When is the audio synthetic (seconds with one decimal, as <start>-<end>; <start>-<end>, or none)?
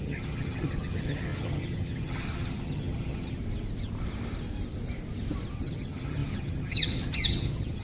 0.0-3.4; 5.5-7.8